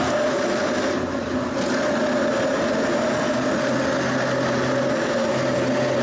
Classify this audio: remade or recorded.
recorded